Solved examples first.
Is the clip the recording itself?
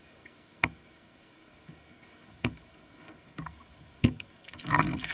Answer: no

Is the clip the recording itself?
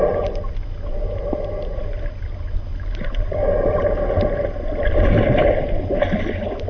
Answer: yes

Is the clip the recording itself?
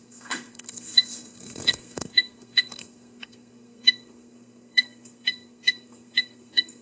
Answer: no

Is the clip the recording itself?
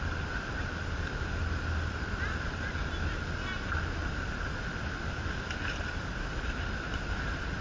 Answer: yes